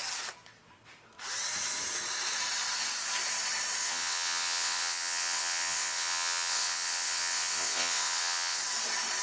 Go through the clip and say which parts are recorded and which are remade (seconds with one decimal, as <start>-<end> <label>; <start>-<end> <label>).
0.0-3.8 recorded; 3.8-8.6 remade; 8.6-9.2 recorded